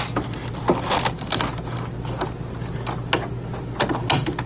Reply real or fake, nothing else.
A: real